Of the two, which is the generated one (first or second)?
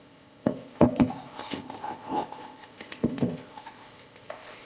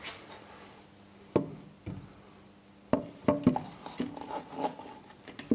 first